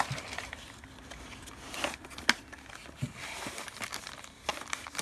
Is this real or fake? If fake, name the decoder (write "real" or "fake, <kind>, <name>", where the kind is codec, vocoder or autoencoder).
real